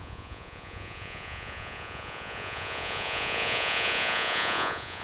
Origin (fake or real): fake